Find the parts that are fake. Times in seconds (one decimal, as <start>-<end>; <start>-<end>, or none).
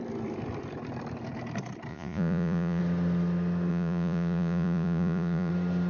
1.9-2.8; 3.7-5.5